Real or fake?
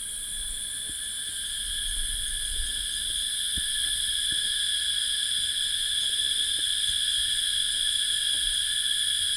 real